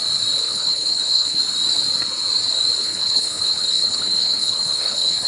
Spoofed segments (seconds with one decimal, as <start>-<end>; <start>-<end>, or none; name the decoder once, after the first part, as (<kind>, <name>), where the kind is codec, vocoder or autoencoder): 0.4-1.4 (codec, HILCodec); 2.8-5.3